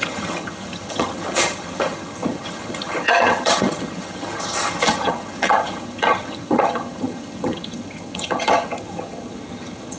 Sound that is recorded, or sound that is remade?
remade